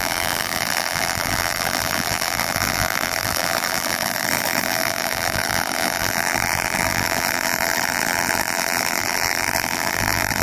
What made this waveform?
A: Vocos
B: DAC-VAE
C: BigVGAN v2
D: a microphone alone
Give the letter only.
C